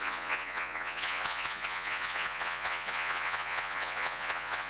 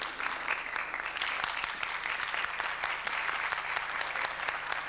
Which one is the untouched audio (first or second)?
second